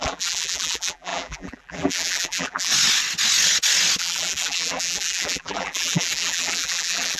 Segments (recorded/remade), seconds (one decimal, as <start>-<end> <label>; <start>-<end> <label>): 0.0-2.7 remade; 2.7-4.0 recorded; 4.0-7.2 remade